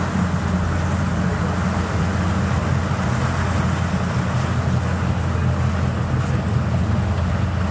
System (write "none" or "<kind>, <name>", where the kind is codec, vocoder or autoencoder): none